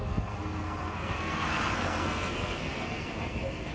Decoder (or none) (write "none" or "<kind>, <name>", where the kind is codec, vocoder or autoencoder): codec, SNAC